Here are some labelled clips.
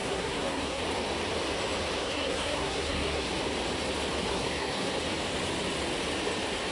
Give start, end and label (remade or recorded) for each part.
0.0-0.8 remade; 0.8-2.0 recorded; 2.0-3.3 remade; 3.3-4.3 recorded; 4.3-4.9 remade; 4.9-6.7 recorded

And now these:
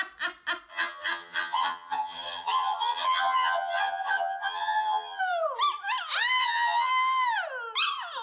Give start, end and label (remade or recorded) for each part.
0.0-0.7 recorded; 0.7-5.2 remade; 5.2-6.4 recorded; 6.4-6.9 remade; 6.9-8.2 recorded

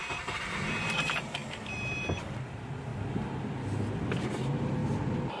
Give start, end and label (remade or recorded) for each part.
0.0-2.9 remade; 2.9-4.2 recorded; 4.2-4.8 remade; 4.8-5.4 recorded

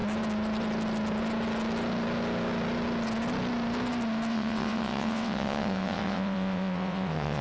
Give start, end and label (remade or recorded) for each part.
0.0-4.3 recorded; 4.3-7.4 remade

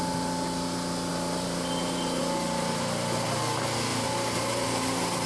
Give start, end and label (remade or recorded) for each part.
0.0-1.1 recorded; 1.1-2.2 remade; 2.2-3.9 recorded; 3.9-5.3 remade

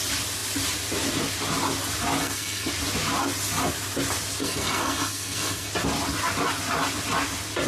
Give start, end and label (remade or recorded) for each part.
0.0-2.2 recorded; 2.2-2.7 remade; 2.7-4.4 recorded; 4.4-5.7 remade; 5.7-7.7 recorded

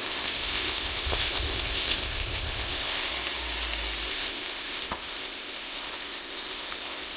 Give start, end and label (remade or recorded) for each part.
0.0-3.1 remade; 3.1-4.1 recorded; 4.1-7.2 remade